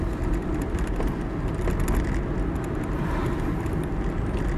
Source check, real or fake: real